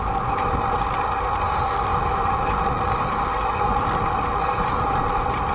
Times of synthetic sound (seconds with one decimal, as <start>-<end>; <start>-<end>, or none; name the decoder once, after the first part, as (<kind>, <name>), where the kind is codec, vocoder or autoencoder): none